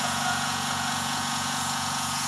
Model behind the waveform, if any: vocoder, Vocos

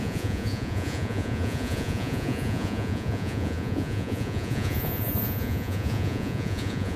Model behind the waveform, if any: vocoder, Vocos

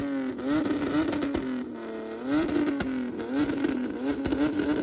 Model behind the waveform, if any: none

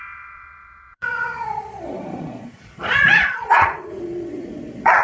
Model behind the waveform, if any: vocoder, Vocos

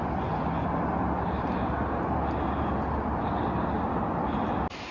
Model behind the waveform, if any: none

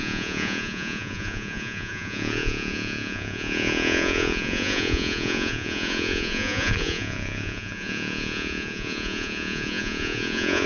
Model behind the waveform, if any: vocoder, Vocos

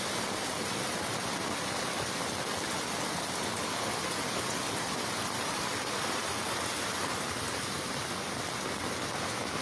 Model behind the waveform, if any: none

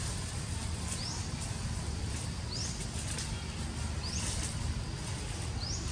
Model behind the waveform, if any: none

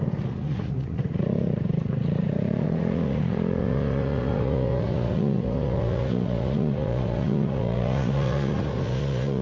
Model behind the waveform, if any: vocoder, Vocos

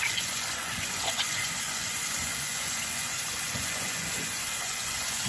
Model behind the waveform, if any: vocoder, Vocos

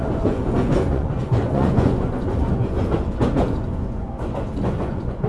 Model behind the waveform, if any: vocoder, Vocos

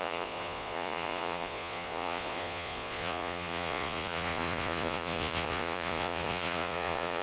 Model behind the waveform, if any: vocoder, Vocos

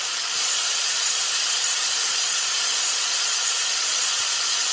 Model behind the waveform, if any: vocoder, Vocos